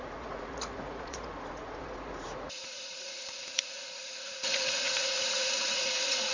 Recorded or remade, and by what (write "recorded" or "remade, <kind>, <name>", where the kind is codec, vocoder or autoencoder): remade, vocoder, Vocos